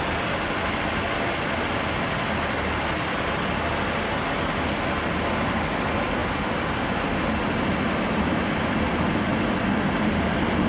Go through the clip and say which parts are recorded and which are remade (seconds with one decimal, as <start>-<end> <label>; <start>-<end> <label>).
0.0-10.7 recorded